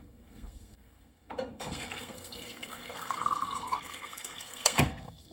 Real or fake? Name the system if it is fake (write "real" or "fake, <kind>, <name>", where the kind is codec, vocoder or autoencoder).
fake, codec, SNAC